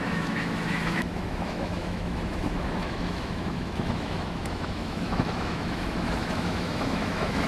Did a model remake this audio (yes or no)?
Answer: yes